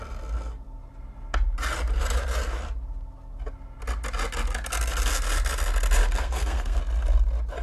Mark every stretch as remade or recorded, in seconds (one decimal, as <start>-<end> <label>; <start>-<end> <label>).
0.0-6.0 recorded; 6.0-6.8 remade; 6.8-7.6 recorded